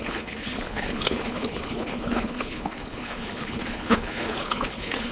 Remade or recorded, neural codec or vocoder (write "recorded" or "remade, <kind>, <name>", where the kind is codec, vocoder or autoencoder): remade, codec, HILCodec